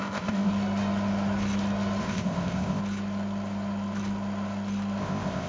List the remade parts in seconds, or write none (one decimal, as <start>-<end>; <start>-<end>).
0.0-0.5; 2.0-2.8; 5.0-5.5